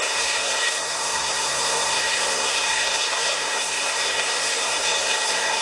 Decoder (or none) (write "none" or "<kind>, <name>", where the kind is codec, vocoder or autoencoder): codec, SNAC